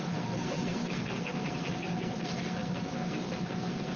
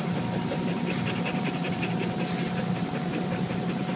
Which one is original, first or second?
second